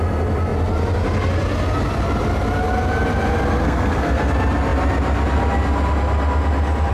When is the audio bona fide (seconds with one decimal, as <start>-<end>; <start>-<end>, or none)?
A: 0.0-3.6; 4.3-6.9